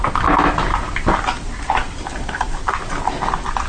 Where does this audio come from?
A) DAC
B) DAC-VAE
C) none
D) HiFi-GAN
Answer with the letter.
C